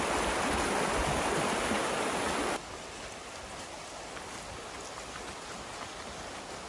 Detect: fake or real real